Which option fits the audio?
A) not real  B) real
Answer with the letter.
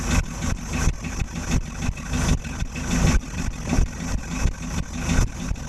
B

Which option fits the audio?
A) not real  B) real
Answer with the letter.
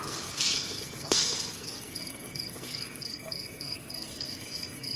A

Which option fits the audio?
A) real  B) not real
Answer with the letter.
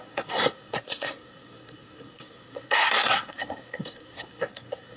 B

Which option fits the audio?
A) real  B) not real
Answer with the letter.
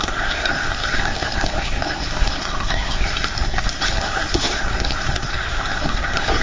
B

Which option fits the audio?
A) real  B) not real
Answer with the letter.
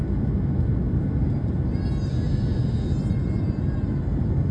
A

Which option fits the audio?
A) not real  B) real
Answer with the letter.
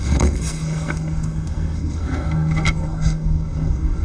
A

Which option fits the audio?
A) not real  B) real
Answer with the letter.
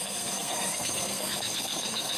A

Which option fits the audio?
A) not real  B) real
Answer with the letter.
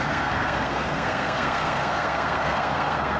A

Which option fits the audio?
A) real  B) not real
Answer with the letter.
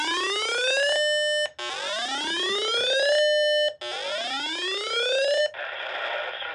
A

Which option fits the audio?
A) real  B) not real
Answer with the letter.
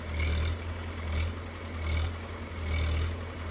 A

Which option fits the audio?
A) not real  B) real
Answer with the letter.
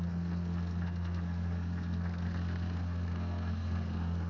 A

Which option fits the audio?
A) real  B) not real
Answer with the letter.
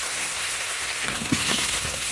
B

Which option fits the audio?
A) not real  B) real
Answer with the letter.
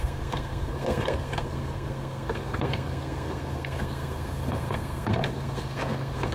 A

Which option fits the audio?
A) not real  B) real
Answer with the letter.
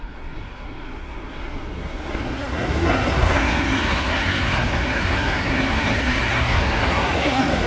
A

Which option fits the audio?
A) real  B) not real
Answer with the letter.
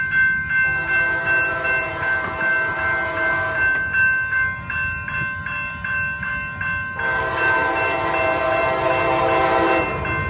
A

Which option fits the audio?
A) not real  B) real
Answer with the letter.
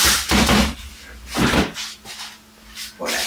B